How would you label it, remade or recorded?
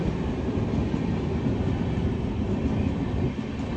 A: recorded